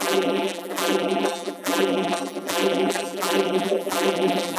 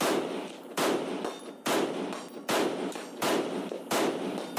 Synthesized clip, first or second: first